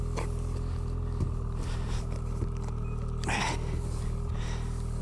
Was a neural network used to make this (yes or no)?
no